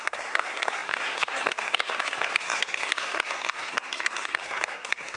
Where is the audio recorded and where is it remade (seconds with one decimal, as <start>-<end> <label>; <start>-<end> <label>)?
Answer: 0.0-5.2 remade